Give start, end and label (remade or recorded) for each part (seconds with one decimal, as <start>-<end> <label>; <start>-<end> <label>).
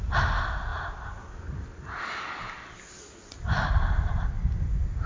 0.0-5.1 recorded